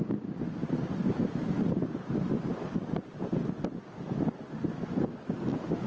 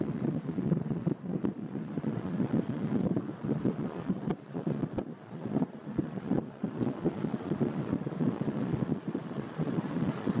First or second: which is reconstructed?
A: second